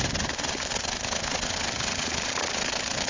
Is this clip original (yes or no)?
yes